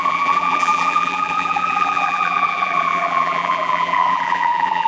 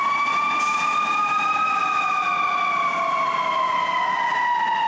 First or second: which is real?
second